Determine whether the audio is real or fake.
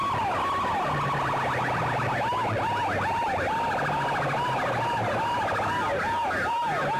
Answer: real